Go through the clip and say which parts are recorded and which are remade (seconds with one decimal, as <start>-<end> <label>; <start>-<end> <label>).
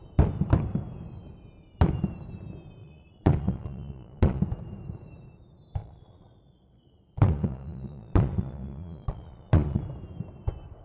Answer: 0.0-2.8 recorded; 2.8-4.4 remade; 4.4-5.8 recorded; 5.8-9.8 remade; 9.8-10.8 recorded